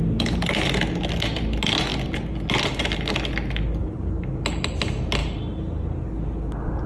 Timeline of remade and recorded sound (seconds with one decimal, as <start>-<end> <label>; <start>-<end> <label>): 0.0-3.8 recorded; 3.8-4.4 remade; 4.4-6.9 recorded